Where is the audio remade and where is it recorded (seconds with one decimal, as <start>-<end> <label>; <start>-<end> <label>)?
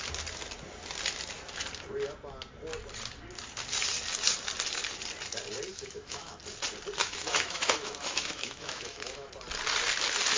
0.0-5.7 recorded; 5.7-6.4 remade; 6.4-7.0 recorded; 7.0-9.3 remade; 9.3-10.4 recorded